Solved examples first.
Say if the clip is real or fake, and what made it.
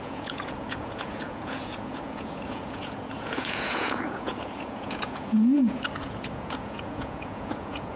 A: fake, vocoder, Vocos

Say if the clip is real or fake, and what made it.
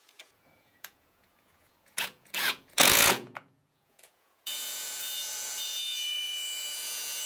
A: fake, vocoder, Vocos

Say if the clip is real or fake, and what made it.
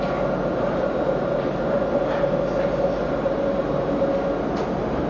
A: real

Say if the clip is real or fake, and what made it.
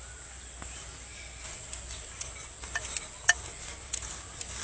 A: real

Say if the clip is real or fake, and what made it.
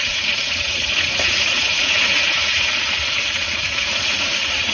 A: fake, vocoder, Vocos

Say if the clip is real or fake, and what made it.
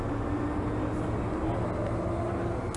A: real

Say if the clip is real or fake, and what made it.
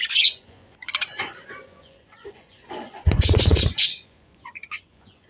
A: fake, vocoder, Vocos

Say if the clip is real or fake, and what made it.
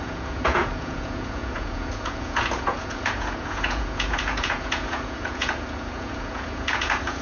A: fake, vocoder, Vocos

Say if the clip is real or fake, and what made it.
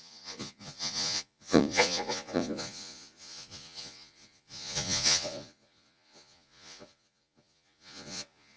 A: fake, vocoder, Vocos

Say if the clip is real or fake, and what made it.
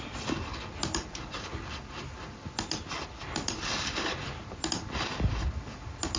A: real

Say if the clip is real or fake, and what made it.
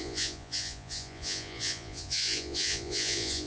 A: fake, vocoder, Vocos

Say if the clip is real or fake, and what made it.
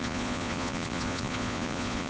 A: fake, vocoder, Vocos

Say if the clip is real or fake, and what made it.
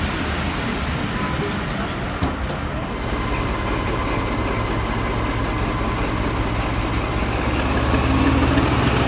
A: real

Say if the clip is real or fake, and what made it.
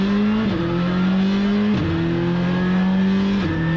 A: real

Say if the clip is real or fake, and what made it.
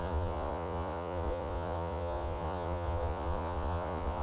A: fake, vocoder, Vocos